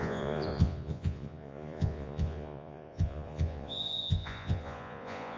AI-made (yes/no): yes